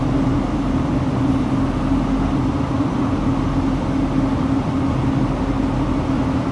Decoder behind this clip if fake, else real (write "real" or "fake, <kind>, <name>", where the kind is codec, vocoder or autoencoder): real